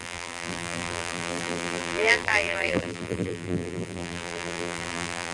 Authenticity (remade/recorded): remade